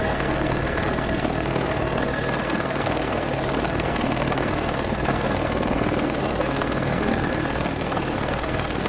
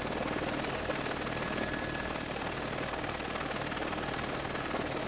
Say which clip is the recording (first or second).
second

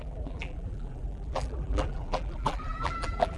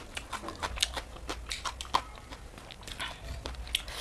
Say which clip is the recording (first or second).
second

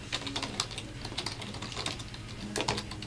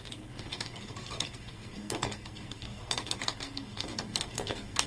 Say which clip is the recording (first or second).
first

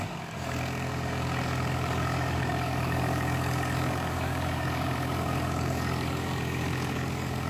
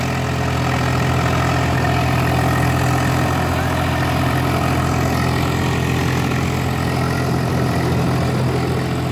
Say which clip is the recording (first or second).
second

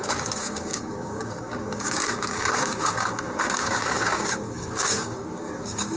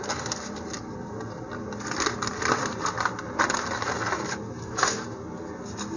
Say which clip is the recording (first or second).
second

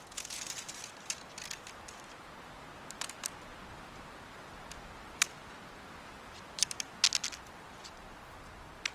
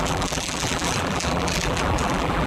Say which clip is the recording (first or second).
first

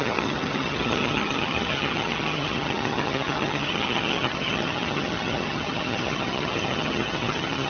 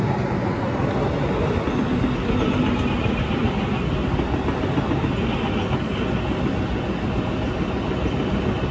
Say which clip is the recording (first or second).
second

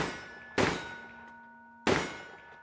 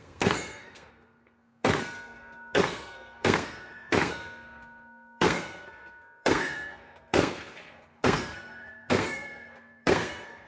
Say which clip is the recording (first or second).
first